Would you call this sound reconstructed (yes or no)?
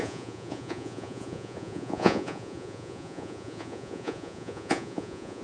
yes